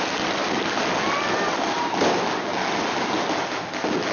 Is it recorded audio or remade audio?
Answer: recorded